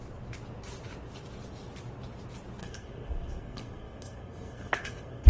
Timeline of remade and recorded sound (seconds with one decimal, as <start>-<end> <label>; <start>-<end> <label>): 0.0-2.6 recorded; 2.6-5.3 remade